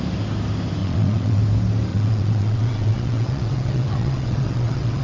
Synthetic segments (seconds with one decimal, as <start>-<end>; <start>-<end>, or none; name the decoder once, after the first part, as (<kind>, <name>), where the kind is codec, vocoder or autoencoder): 0.8-1.4 (vocoder, WaveNeXt); 1.9-5.0